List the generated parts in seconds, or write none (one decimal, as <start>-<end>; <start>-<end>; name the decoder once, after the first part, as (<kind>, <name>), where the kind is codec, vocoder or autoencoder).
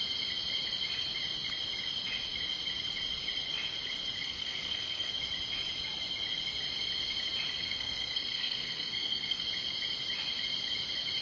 4.2-5.1 (codec, SNAC); 7.6-9.4